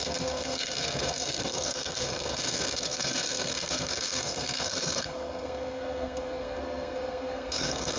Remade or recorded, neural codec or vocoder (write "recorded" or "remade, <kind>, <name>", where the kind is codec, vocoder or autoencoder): remade, codec, SNAC